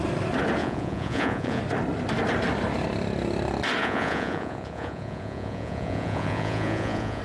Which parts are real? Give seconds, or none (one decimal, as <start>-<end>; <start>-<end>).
0.0-0.6; 1.6-3.8

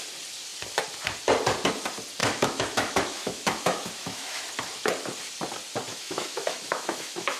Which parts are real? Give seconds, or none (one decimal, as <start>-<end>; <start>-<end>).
0.0-2.2; 4.4-5.9